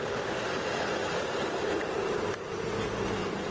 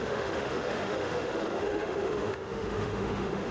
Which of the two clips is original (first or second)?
first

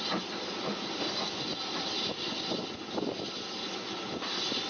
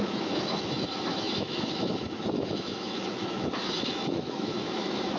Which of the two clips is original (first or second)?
first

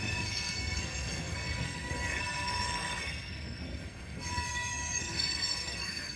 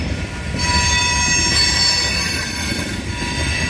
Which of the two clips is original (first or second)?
second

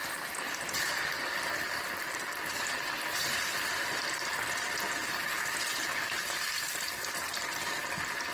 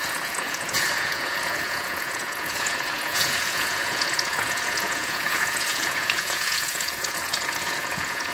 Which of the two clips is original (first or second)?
first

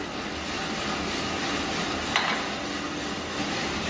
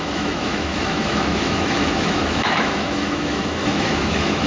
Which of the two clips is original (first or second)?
first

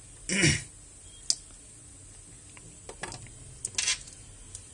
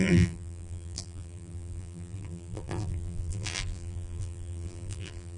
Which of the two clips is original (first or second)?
first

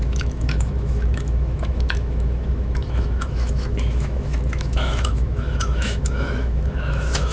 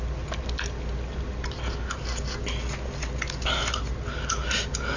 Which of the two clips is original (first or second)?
second